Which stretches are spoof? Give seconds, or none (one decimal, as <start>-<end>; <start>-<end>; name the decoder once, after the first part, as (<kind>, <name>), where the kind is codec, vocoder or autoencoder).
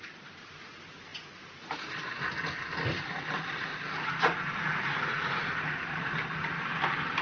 3.7-6.1 (vocoder, Vocos)